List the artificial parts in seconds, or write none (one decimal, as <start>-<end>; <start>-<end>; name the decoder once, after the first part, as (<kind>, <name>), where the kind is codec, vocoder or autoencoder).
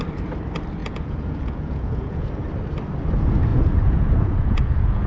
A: 0.8-2.3 (vocoder, Vocos); 3.5-5.1